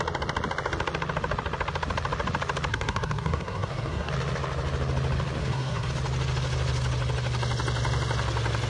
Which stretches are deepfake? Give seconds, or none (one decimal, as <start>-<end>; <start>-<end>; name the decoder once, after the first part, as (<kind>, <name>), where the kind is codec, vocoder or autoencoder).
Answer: 2.7-4.1 (codec, SNAC); 5.4-5.9